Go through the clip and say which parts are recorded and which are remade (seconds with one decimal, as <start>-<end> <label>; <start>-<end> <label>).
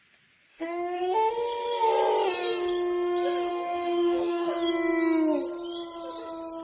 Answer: 0.0-0.5 recorded; 0.5-1.3 remade; 1.3-3.5 recorded; 3.5-4.5 remade; 4.5-6.6 recorded